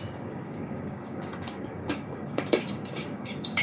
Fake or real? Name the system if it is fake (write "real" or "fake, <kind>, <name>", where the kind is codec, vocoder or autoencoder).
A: fake, codec, DAC